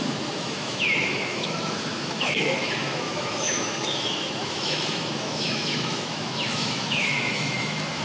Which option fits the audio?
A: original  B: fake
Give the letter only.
B